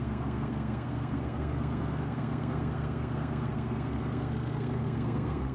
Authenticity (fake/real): fake